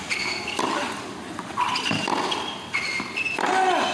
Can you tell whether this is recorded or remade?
recorded